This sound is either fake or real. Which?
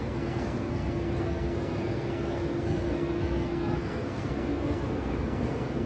fake